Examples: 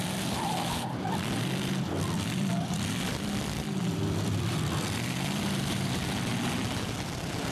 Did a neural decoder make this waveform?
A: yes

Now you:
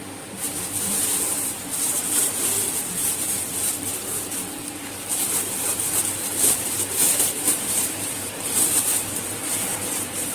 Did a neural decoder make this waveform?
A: yes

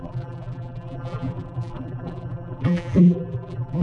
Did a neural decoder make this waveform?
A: yes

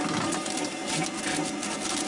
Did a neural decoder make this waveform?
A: no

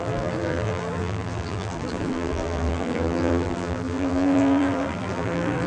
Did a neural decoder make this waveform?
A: yes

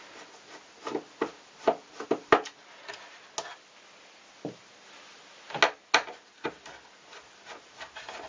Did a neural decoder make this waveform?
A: no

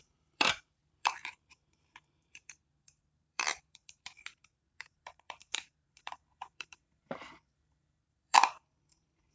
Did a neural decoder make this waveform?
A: yes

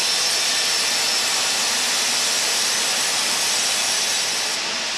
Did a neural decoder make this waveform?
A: yes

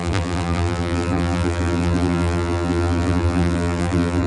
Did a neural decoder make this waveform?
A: yes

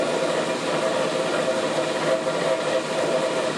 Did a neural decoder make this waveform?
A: no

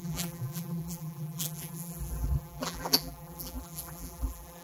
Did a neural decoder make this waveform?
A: yes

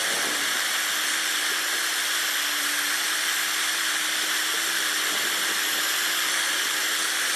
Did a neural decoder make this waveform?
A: no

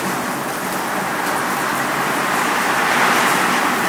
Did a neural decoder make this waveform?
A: no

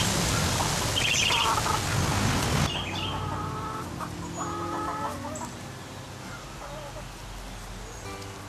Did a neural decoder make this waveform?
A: no